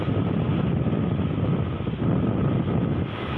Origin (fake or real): real